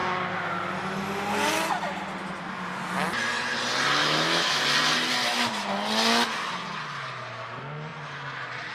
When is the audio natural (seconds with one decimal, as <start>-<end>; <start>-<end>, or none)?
0.0-4.0; 4.6-8.7